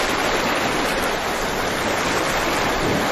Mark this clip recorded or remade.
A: recorded